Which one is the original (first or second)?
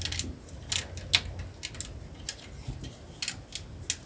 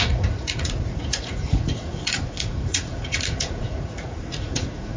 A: first